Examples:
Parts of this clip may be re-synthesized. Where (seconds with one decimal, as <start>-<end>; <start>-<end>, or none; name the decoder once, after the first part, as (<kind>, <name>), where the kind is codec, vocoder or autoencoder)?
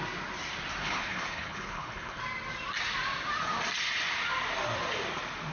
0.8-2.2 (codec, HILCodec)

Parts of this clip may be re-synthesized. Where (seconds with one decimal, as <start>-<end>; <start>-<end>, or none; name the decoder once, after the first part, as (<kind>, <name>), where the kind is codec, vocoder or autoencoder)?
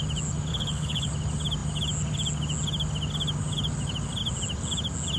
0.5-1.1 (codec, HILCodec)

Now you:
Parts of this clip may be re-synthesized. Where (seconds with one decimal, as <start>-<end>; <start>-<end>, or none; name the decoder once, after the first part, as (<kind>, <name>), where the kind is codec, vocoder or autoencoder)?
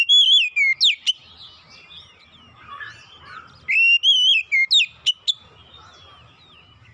none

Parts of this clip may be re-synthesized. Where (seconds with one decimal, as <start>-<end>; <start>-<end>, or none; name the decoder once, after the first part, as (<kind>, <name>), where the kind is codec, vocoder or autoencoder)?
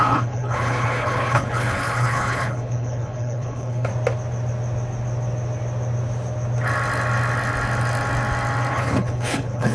0.0-3.9 (codec, HILCodec); 8.7-9.7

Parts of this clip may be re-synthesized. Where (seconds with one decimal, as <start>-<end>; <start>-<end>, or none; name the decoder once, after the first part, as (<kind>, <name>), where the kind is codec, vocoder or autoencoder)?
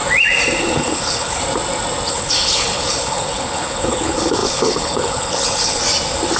0.6-1.4 (codec, HILCodec); 2.1-5.8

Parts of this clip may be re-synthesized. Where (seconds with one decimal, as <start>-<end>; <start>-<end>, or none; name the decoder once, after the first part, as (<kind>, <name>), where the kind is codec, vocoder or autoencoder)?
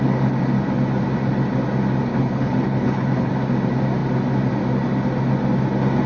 2.1-3.3 (codec, HILCodec)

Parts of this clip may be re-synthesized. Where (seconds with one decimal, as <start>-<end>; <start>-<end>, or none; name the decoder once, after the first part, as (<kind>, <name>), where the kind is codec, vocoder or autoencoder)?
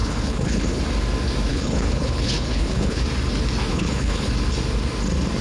0.0-0.8 (codec, HILCodec); 1.5-3.0; 3.7-4.3